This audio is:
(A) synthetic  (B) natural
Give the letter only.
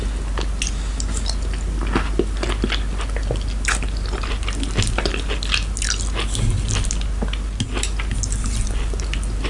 B